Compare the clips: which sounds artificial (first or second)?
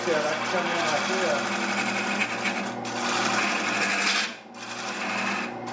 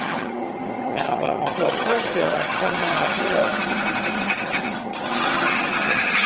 second